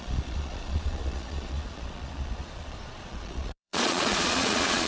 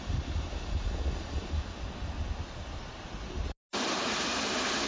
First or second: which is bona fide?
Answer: second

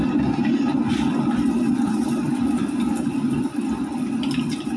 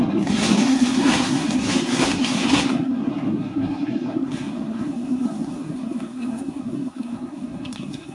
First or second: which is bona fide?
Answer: first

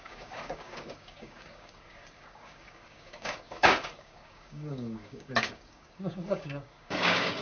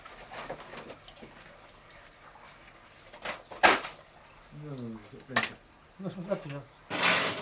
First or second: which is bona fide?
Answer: second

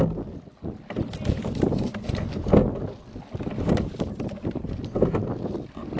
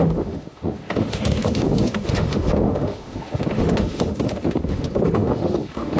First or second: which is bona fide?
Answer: first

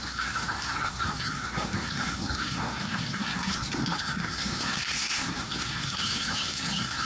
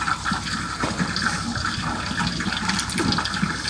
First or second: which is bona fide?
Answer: second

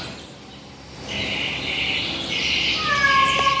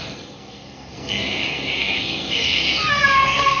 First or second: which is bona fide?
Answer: first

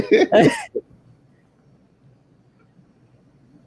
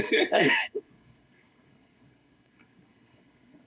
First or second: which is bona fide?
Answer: first